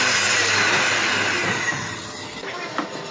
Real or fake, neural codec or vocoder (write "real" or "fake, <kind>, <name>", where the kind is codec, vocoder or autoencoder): real